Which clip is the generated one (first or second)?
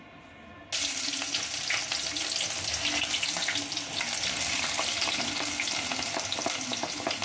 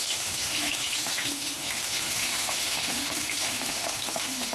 second